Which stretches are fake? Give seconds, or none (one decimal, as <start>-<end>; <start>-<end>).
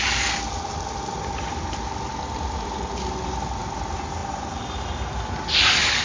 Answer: none